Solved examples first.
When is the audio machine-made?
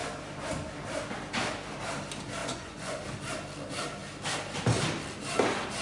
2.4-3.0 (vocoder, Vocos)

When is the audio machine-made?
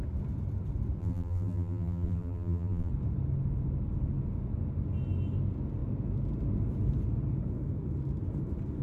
1.0-2.9 (vocoder, BigVGAN v2)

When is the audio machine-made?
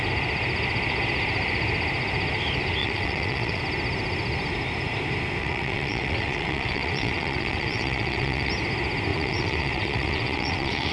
2.8-3.6 (vocoder, WaveNeXt); 5.4-8.5; 9.1-10.9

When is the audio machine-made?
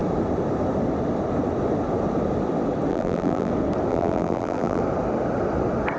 2.9-3.5 (vocoder, BigVGAN v2); 3.9-4.8